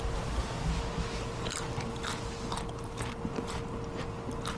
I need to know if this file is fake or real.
real